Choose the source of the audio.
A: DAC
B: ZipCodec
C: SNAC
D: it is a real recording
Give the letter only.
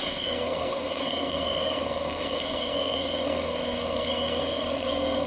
C